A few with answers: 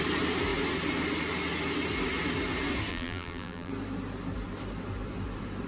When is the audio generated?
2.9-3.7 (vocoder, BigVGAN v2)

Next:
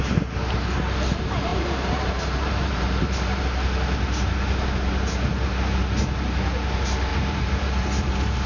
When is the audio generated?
1.5-3.4 (vocoder, BigVGAN v2); 7.1-8.5